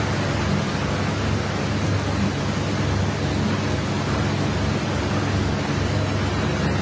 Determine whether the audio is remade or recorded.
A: recorded